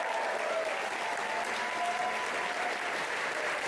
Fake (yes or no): no